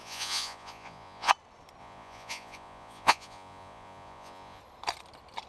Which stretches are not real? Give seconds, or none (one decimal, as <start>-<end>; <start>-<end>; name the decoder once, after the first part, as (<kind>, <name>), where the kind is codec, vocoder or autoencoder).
0.0-1.3 (vocoder, Vocos); 1.8-4.6